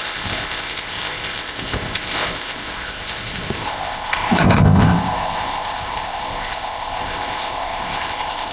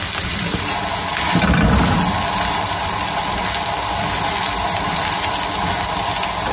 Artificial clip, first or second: first